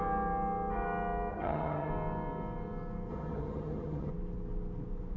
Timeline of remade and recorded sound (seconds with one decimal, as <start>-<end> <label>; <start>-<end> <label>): 0.0-1.3 recorded; 1.3-1.9 remade; 1.9-3.1 recorded; 3.1-4.1 remade; 4.1-5.2 recorded